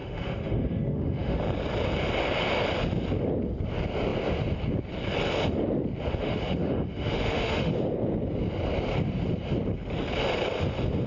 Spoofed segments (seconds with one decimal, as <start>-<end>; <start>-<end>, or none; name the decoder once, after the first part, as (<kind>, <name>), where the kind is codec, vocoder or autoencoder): 0.0-1.4 (autoencoder, DAC-VAE); 6.1-7.7